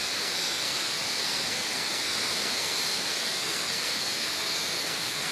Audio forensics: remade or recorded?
remade